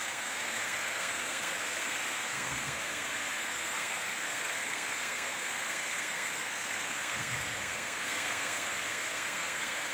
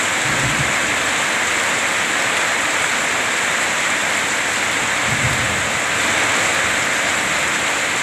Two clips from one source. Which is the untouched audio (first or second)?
second